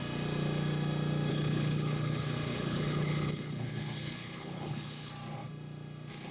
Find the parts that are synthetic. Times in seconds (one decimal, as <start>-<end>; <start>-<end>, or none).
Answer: 1.3-5.1